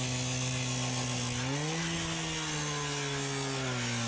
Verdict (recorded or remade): recorded